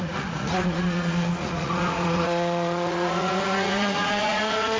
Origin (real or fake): fake